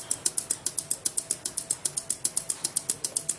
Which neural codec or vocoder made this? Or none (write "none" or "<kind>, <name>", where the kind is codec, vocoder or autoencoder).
none